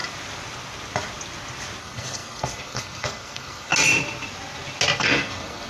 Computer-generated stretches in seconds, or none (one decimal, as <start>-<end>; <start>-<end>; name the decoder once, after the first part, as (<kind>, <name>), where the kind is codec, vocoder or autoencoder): 1.8-3.7 (codec, SNAC); 5.0-5.7